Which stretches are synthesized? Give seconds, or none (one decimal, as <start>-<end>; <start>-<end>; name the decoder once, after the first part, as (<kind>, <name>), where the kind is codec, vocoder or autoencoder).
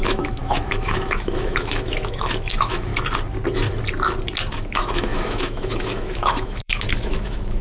0.0-2.9 (autoencoder, DAC-VAE); 4.5-7.6